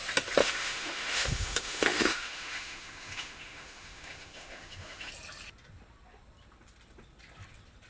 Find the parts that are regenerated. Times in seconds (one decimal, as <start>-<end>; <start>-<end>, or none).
0.4-5.1